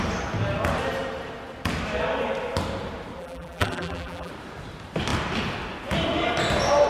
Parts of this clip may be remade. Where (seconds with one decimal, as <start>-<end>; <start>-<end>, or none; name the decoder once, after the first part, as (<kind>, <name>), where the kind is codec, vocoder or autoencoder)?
3.2-4.3 (vocoder, BigVGAN v2)